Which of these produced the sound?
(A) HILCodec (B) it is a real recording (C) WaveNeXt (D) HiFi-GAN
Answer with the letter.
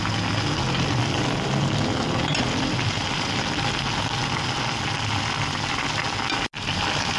B